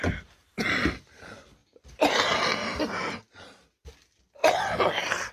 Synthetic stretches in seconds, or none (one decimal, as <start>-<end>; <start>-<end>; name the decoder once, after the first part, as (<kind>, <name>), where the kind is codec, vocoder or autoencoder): 4.4-5.3 (vocoder, BigVGAN v2)

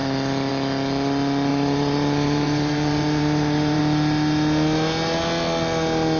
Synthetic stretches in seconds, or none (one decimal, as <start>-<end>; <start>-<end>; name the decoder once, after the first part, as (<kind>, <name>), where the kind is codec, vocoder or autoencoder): 1.5-3.8 (vocoder, BigVGAN v2)

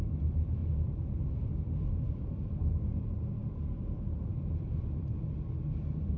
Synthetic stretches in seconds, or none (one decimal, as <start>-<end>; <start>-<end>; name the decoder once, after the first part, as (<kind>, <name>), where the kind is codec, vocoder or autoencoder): 0.6-2.3 (vocoder, BigVGAN v2); 3.4-5.2

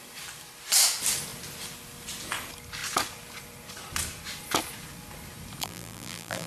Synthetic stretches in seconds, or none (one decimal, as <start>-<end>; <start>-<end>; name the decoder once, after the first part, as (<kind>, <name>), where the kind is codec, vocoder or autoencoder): 5.6-6.5 (vocoder, BigVGAN v2)